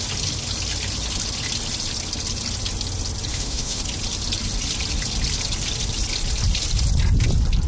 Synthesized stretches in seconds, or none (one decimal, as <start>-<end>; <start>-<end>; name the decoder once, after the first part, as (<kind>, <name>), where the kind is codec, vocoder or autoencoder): 3.3-3.8 (autoencoder, DAC-VAE)